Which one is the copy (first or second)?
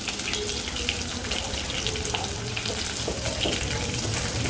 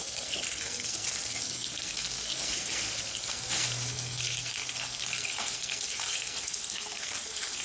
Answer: second